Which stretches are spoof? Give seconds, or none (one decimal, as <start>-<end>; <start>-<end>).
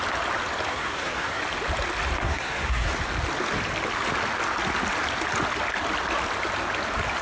0.7-1.4; 2.2-2.9